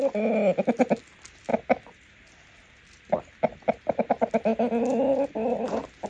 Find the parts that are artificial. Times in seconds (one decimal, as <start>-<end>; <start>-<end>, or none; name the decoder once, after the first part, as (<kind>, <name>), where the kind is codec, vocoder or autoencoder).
none